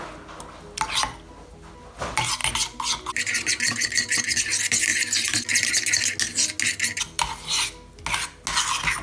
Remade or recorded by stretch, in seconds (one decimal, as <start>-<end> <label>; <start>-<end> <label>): 0.0-9.0 recorded